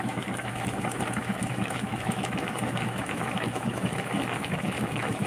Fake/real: fake